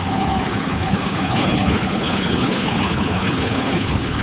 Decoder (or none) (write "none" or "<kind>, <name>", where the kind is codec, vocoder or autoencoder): codec, HILCodec